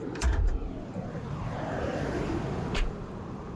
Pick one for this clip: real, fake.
fake